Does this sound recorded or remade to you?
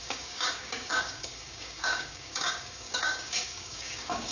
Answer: remade